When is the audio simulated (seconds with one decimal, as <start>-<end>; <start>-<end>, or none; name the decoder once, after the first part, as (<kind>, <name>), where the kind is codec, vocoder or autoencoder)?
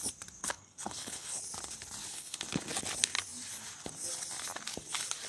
0.4-1.4 (codec, HILCodec); 2.1-2.6